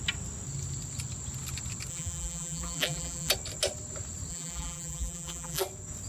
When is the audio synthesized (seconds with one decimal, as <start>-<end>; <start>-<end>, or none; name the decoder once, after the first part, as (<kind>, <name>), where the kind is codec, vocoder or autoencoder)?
1.9-3.3 (vocoder, BigVGAN v2); 4.3-5.6

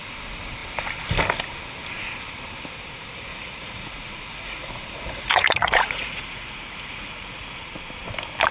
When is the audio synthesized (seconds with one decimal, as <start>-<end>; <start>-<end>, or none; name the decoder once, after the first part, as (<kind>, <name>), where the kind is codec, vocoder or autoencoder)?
3.3-7.7 (vocoder, Vocos)

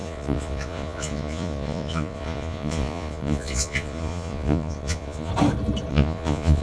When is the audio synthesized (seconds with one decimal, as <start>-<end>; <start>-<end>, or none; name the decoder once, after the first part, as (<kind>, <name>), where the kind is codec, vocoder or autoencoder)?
0.0-5.3 (vocoder, Vocos); 5.9-6.6

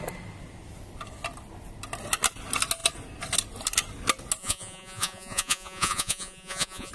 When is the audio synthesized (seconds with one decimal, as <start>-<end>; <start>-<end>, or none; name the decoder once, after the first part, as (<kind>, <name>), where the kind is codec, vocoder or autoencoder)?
4.4-6.9 (vocoder, Vocos)

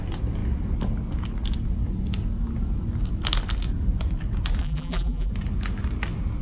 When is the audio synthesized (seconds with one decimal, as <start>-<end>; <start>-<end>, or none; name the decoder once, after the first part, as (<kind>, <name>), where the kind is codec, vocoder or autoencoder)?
4.6-5.3 (vocoder, BigVGAN v2)